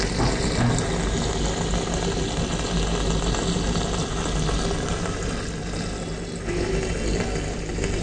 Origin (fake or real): real